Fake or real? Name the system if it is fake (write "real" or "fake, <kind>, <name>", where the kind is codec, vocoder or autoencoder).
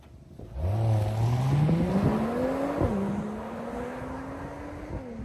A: real